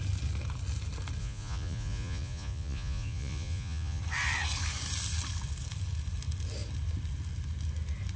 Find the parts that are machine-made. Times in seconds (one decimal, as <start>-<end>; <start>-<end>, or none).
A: 1.2-4.0